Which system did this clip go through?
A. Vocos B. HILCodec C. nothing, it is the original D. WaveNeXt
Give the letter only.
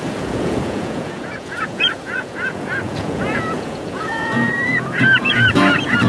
A